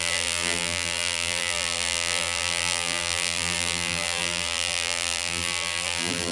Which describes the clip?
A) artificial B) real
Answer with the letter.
A